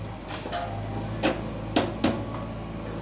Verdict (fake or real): real